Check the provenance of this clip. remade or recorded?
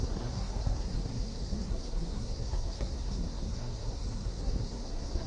remade